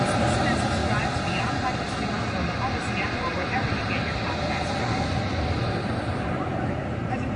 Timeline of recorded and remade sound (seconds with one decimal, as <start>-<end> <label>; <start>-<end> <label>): 0.0-7.4 recorded